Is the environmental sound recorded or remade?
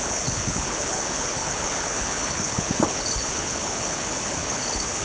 remade